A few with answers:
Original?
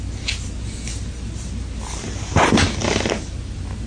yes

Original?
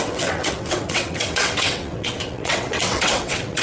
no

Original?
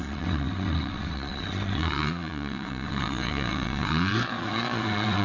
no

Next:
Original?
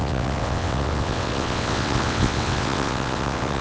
no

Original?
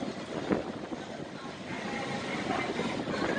yes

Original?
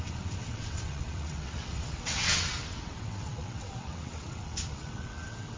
no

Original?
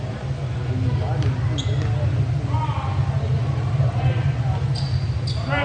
yes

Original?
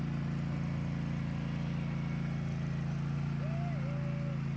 yes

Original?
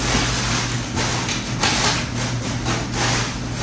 yes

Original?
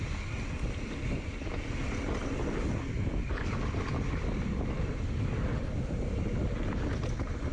yes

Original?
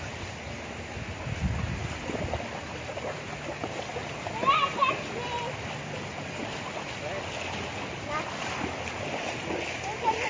yes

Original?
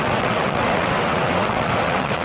no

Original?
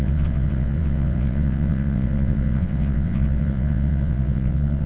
no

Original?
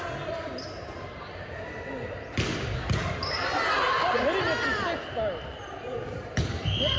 yes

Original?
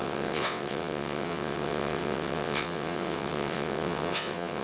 no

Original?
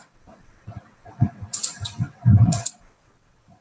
no